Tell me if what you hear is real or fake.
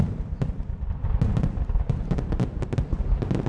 real